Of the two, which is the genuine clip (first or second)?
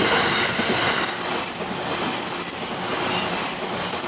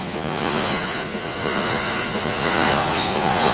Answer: first